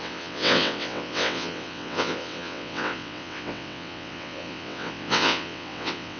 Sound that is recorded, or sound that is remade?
remade